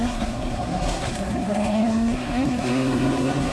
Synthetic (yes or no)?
yes